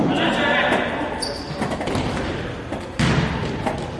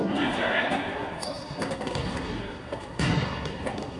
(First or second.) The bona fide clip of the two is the first